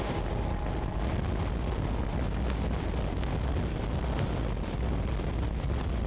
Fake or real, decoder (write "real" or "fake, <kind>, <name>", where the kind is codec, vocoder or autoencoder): real